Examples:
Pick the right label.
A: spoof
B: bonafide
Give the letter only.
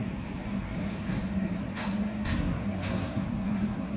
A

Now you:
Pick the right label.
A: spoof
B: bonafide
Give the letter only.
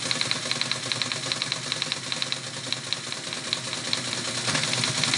B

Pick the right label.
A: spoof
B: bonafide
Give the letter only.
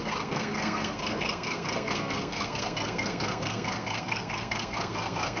A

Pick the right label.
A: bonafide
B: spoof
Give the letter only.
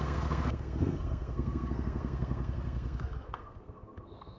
B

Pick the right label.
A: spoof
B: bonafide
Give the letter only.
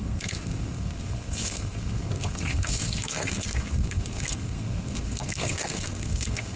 A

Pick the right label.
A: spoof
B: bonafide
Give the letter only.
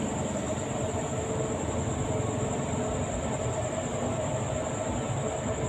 B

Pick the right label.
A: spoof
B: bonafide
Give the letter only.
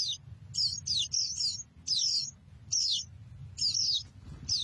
B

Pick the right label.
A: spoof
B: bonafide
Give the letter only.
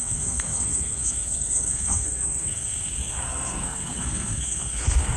A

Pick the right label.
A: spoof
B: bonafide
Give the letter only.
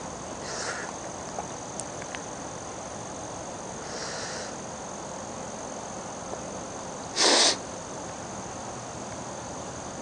B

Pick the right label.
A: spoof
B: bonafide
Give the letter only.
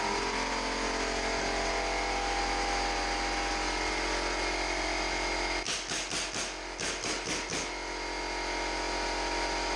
B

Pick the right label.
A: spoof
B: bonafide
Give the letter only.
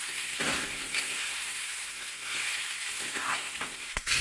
A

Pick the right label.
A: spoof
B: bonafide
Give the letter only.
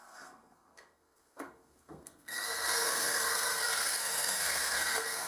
A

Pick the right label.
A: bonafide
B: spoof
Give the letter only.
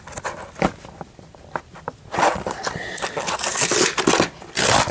A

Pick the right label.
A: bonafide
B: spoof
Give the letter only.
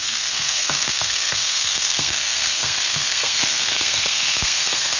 B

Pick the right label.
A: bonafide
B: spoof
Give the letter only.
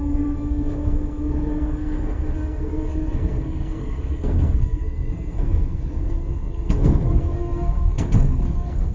B